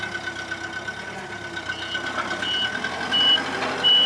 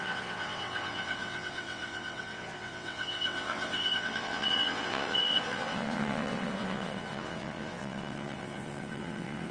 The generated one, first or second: second